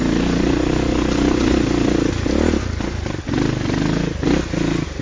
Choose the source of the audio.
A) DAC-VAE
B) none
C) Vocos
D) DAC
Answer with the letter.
B